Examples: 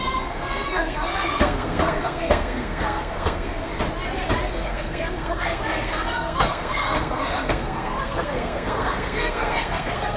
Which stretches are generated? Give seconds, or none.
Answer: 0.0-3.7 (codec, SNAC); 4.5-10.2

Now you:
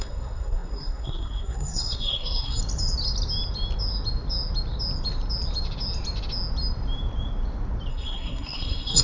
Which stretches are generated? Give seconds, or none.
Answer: 0.0-2.6 (codec, SNAC); 7.9-9.0